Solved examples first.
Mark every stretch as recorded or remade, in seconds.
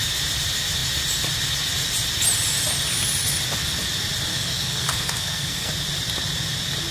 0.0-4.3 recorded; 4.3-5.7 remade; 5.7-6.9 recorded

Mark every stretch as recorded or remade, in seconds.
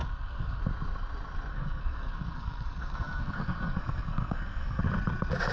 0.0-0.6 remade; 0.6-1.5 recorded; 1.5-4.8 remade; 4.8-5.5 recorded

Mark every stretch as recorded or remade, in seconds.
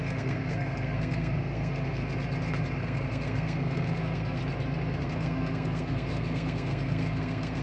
0.0-2.0 remade; 2.0-2.8 recorded; 2.8-4.4 remade; 4.4-5.0 recorded; 5.0-7.6 remade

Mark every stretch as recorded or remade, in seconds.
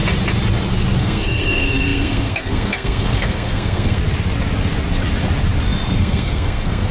0.0-1.0 recorded; 1.0-4.0 remade; 4.0-6.0 recorded; 6.0-6.9 remade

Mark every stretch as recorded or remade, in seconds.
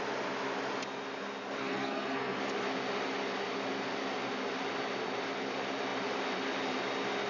0.0-1.6 recorded; 1.6-2.4 remade; 2.4-7.3 recorded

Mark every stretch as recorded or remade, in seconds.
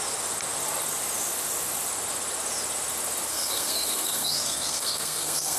0.0-3.3 recorded; 3.3-5.6 remade